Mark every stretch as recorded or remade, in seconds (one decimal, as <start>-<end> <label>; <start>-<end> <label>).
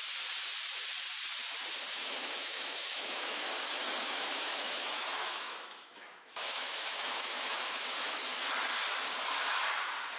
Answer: 0.0-2.0 recorded; 2.0-3.5 remade; 3.5-4.0 recorded; 4.0-8.2 remade; 8.2-10.2 recorded